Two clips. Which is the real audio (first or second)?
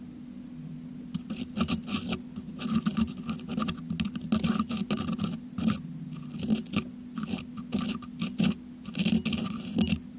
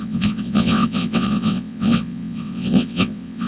first